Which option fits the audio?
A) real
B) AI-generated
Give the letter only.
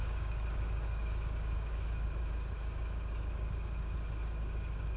B